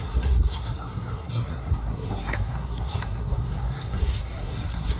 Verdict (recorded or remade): remade